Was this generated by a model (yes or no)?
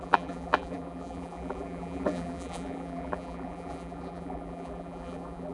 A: yes